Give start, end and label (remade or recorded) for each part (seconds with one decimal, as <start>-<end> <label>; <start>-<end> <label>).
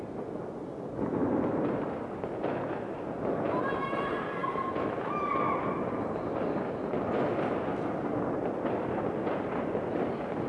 0.0-10.5 recorded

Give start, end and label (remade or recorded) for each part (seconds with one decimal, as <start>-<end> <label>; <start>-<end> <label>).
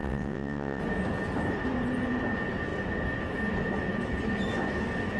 0.0-0.8 remade; 0.8-5.2 recorded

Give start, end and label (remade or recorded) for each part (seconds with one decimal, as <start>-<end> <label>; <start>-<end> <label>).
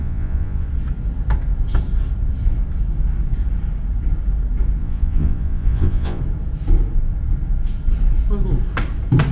0.0-0.7 remade; 0.7-4.8 recorded; 4.8-6.2 remade; 6.2-9.3 recorded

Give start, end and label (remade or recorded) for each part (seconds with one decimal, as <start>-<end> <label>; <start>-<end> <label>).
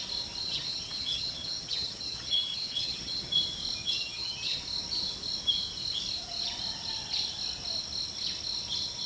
0.0-0.4 recorded; 0.4-3.3 remade; 3.3-3.8 recorded; 3.8-4.6 remade; 4.6-9.1 recorded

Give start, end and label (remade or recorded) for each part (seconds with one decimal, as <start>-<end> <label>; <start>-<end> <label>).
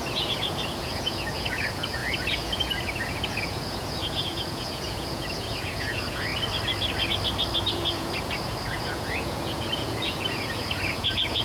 0.0-6.3 remade; 6.3-7.7 recorded; 7.7-11.4 remade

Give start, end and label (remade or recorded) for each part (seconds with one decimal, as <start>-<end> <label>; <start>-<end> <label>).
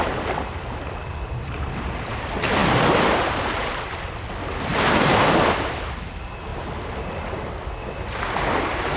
0.0-9.0 recorded